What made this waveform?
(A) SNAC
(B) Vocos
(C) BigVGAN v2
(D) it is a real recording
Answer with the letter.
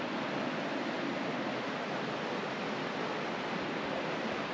D